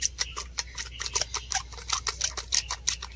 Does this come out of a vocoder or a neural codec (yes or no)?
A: no